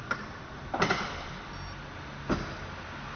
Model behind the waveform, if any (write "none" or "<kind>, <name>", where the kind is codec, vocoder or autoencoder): none